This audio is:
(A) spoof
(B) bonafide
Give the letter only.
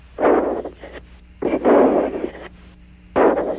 B